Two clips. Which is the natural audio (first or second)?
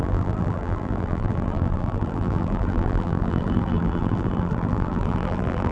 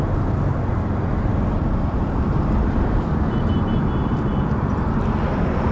second